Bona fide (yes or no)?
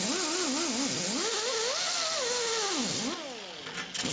yes